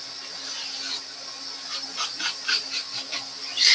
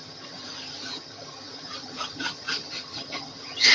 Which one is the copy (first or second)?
second